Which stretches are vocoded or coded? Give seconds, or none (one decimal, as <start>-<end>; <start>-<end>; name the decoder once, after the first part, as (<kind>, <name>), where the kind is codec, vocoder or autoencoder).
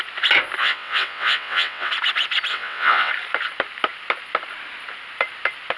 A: 0.6-1.9 (vocoder, WaveNeXt); 2.5-3.1